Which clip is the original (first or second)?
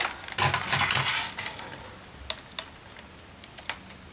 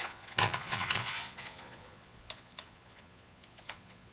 first